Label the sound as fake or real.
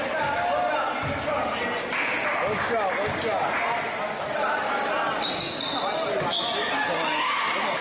real